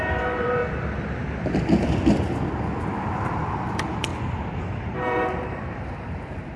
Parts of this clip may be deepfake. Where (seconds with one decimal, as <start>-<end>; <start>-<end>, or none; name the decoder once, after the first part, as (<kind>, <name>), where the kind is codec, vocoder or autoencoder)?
0.0-0.6 (vocoder, BigVGAN v2); 3.4-4.1; 4.6-6.6